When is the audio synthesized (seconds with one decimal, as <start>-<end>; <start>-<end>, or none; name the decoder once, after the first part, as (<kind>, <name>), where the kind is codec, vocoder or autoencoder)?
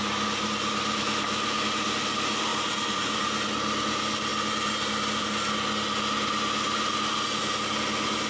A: none